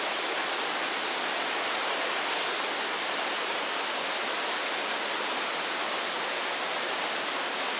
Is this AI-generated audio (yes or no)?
no